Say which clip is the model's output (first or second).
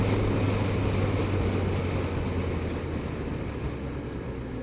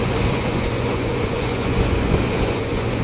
second